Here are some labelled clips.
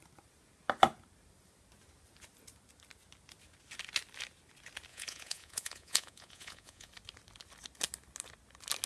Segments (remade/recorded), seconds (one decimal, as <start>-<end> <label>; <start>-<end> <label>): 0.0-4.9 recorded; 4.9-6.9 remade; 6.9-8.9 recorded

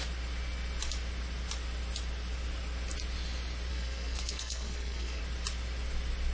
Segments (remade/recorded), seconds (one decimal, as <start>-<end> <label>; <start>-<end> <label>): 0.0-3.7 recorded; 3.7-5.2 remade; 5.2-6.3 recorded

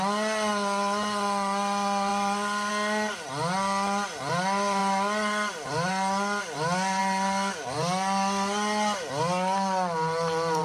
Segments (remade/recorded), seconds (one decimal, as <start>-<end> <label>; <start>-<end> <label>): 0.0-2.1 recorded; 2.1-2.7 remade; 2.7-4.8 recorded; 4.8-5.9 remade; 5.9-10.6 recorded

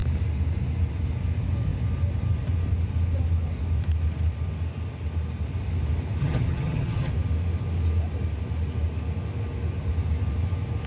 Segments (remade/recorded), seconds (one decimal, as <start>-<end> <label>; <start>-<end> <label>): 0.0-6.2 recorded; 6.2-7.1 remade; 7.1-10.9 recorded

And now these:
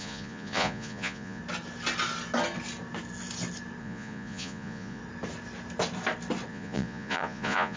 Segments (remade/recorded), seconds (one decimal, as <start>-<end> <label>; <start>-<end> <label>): 0.0-1.4 remade; 1.4-3.8 recorded; 3.8-5.0 remade; 5.0-6.5 recorded; 6.5-7.8 remade

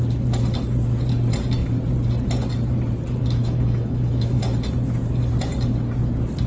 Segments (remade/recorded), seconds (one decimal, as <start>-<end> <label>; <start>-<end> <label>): 0.0-3.2 recorded; 3.2-4.4 remade; 4.4-6.5 recorded